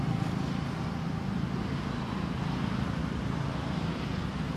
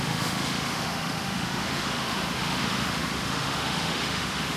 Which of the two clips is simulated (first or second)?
second